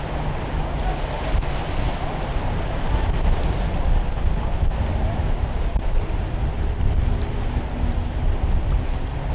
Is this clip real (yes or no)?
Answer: yes